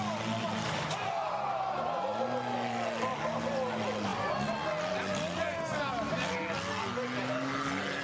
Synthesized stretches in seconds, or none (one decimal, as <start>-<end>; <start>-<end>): none